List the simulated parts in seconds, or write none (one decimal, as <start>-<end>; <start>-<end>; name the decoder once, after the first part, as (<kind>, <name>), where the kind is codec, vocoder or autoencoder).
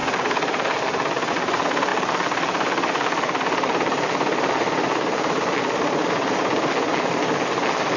none